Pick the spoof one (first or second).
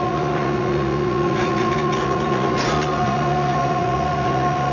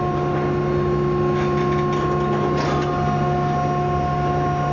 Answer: first